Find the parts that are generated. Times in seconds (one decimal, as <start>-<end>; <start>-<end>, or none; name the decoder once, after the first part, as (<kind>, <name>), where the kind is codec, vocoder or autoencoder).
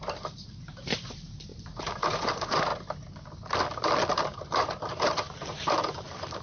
0.0-2.7 (vocoder, BigVGAN v2); 4.1-6.4